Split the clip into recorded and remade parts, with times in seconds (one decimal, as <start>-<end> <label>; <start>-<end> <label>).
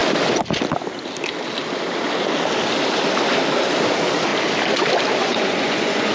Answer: 0.0-5.2 recorded; 5.2-6.1 remade